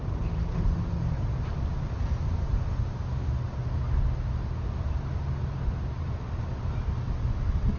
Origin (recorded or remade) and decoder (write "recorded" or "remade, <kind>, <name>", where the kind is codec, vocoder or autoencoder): recorded